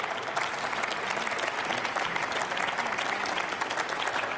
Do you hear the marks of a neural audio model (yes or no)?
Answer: no